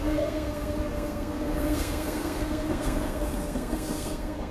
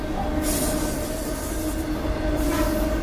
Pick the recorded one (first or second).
second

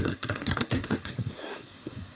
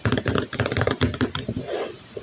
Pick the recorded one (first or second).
second